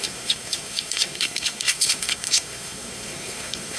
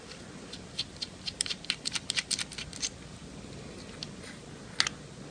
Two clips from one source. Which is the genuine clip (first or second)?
second